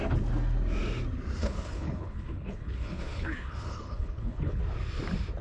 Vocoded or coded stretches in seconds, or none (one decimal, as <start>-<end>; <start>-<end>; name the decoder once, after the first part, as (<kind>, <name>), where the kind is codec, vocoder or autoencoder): 1.4-4.6 (codec, HILCodec)

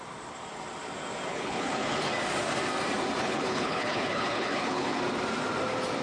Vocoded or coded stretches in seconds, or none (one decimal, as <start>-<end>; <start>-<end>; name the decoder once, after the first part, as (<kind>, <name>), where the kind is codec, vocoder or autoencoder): 1.3-2.0 (codec, HILCodec); 3.2-5.0

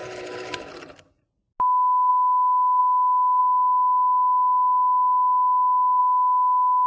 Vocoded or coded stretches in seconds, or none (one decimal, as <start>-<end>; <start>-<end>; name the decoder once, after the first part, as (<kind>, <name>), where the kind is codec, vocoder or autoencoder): 0.0-0.7 (codec, HILCodec)